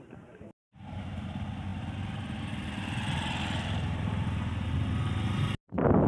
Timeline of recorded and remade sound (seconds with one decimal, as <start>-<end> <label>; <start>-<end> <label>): 0.0-6.1 recorded